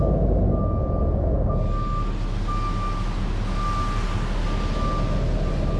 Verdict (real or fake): real